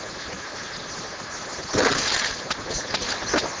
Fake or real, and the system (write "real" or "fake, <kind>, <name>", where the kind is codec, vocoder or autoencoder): real